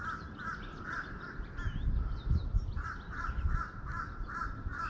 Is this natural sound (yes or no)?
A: yes